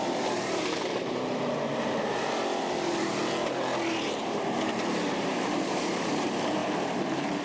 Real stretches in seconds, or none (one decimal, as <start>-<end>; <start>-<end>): 3.2-3.9